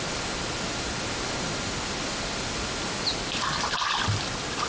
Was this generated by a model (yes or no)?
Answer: no